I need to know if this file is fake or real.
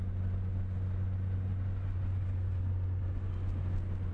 real